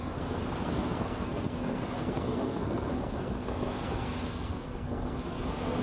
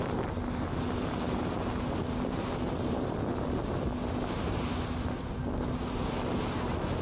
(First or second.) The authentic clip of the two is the second